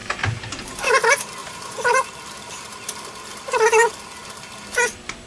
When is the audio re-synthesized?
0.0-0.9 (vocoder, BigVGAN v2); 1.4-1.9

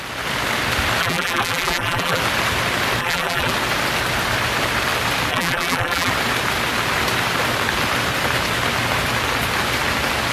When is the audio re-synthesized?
1.0-2.2 (vocoder, BigVGAN v2); 3.0-3.5; 5.3-6.1

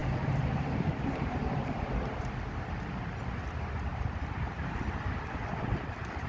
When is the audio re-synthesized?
0.0-2.0 (vocoder, BigVGAN v2); 3.9-4.5

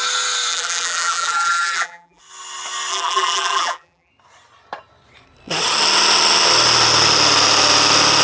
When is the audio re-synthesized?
0.5-2.2 (vocoder, BigVGAN v2); 2.9-4.1